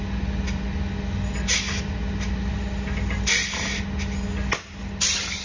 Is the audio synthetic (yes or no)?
no